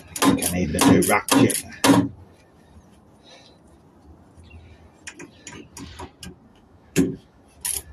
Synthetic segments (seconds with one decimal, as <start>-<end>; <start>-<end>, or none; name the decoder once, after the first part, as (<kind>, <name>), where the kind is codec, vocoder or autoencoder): 6.5-7.4 (autoencoder, DAC-VAE)